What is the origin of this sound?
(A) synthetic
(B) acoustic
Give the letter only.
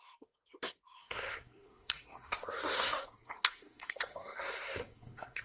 A